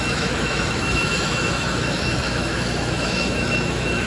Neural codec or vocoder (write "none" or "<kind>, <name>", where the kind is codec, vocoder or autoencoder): autoencoder, DAC-VAE